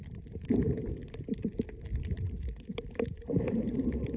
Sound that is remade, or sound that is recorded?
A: remade